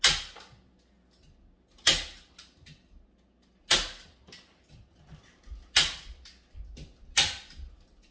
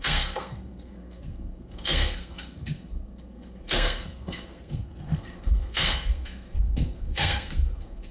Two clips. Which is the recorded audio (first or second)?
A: first